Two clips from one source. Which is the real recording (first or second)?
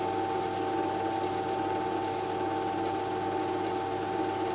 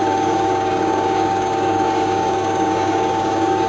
first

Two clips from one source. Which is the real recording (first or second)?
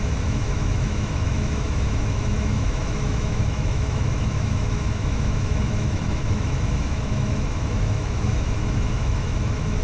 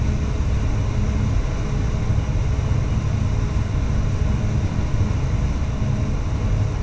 second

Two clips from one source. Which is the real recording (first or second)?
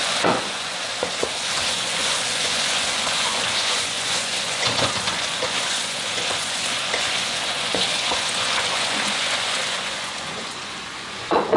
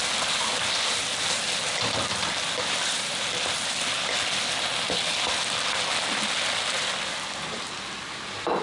second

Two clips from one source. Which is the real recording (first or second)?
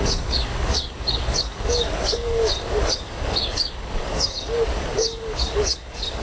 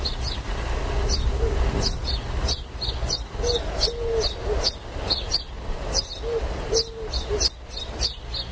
second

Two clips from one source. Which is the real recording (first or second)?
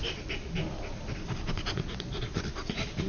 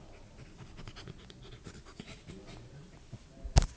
second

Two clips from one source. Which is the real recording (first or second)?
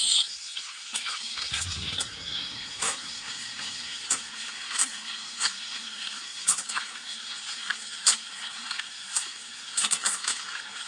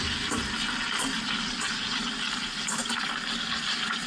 second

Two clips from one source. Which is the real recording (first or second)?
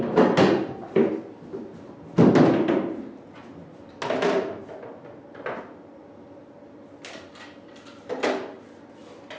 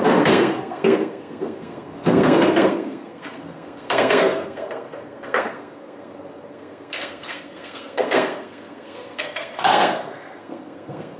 first